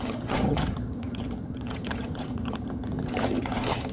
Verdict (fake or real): fake